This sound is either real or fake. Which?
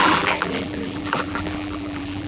fake